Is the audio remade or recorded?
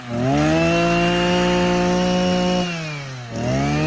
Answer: recorded